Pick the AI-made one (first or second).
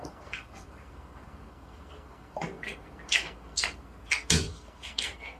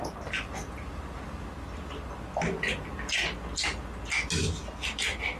first